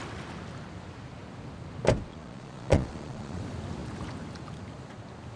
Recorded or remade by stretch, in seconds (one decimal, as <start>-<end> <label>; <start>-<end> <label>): 0.0-2.1 recorded; 2.1-3.4 remade; 3.4-5.4 recorded